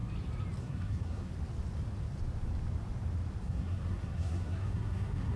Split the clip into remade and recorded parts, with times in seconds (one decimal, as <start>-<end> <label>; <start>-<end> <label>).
0.0-0.6 recorded; 0.6-1.3 remade; 1.3-3.4 recorded; 3.4-5.4 remade

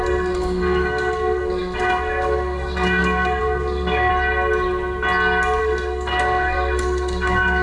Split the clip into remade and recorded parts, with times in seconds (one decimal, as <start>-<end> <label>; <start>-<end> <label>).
0.0-4.1 remade; 4.1-5.6 recorded; 5.6-7.6 remade

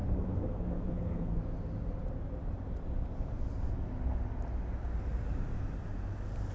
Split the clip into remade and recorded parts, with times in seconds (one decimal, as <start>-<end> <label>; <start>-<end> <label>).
0.0-1.4 remade; 1.4-6.5 recorded